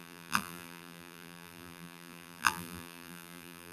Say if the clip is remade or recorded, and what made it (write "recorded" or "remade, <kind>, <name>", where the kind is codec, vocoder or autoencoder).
remade, vocoder, BigVGAN v2